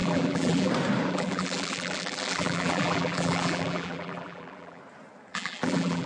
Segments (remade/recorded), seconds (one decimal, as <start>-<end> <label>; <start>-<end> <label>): 0.0-0.7 remade; 0.7-1.1 recorded; 1.1-4.8 remade; 4.8-5.3 recorded; 5.3-6.1 remade